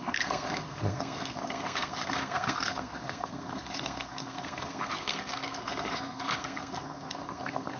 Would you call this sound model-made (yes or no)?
yes